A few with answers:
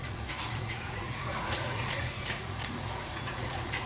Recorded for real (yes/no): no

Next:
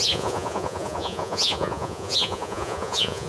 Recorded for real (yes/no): no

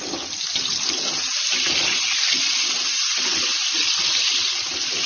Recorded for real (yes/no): yes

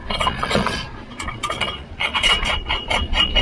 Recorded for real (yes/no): no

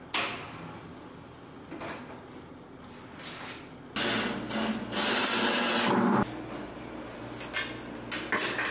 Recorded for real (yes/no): yes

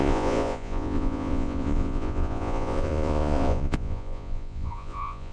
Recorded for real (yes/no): no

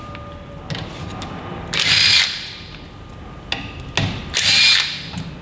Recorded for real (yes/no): yes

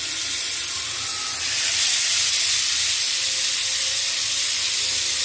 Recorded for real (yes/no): yes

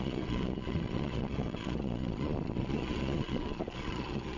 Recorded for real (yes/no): no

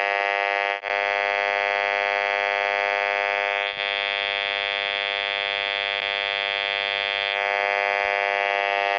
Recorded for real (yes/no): yes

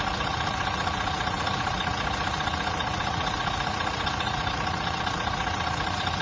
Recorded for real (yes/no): no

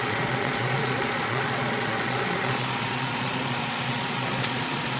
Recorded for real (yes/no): no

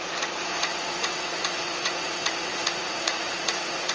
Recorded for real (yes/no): no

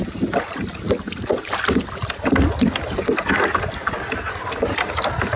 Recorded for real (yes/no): yes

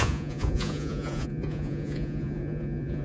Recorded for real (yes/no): no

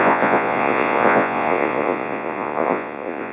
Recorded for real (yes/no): no